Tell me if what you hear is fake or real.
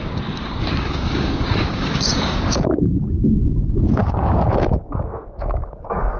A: fake